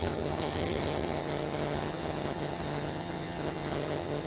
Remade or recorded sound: remade